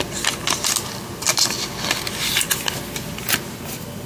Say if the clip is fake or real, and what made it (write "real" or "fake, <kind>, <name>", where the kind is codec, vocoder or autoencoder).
real